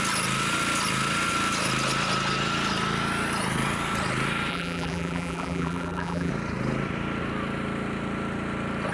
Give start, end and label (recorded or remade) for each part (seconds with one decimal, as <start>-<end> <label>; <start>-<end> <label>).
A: 0.0-4.5 recorded; 4.5-6.3 remade; 6.3-8.9 recorded

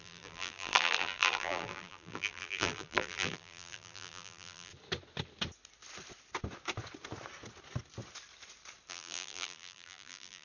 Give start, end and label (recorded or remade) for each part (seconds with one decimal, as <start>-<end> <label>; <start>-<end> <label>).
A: 0.0-4.7 remade; 4.7-8.9 recorded; 8.9-10.4 remade

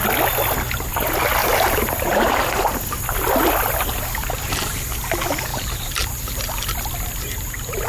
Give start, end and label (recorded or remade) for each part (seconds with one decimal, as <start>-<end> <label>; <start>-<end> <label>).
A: 0.0-1.4 recorded; 1.4-2.4 remade; 2.4-5.5 recorded; 5.5-6.4 remade; 6.4-7.9 recorded

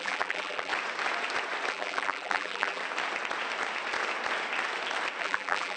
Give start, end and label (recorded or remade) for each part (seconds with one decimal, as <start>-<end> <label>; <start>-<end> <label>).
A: 0.0-0.7 remade; 0.7-1.7 recorded; 1.7-2.8 remade; 2.8-5.2 recorded; 5.2-5.8 remade